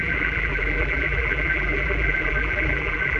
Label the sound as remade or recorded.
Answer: remade